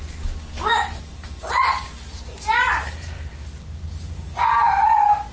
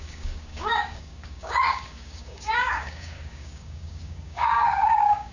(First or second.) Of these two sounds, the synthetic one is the second